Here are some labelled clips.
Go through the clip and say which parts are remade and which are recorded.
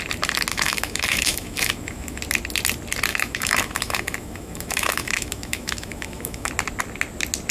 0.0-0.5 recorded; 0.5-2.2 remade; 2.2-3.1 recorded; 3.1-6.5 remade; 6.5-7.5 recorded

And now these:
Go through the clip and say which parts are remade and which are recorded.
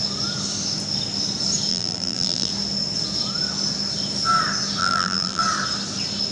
0.0-1.7 recorded; 1.7-2.5 remade; 2.5-4.8 recorded; 4.8-5.4 remade; 5.4-6.3 recorded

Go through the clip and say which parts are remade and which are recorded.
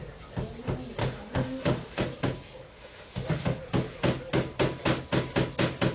0.0-1.0 recorded; 1.0-2.0 remade; 2.0-2.7 recorded; 2.7-3.6 remade; 3.6-5.9 recorded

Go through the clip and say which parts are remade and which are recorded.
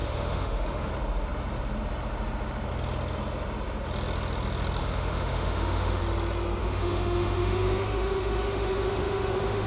0.0-0.9 remade; 0.9-4.8 recorded; 4.8-6.0 remade; 6.0-6.6 recorded; 6.6-9.7 remade